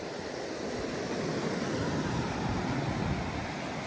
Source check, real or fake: fake